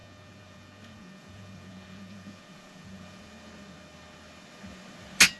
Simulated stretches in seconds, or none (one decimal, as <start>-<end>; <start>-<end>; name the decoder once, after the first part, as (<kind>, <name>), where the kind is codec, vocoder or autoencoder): 0.0-3.2 (vocoder, Vocos)